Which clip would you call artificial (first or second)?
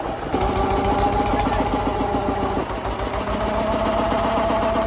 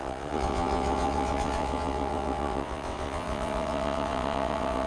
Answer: second